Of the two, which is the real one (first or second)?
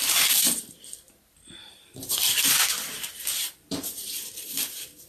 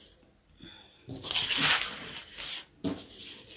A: second